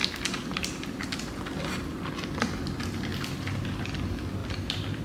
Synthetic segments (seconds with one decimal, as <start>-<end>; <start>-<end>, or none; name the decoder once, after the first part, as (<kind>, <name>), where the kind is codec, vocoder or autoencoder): 4.4-5.0 (vocoder, BigVGAN v2)